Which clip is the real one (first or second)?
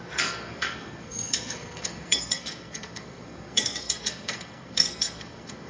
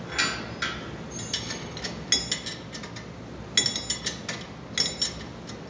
second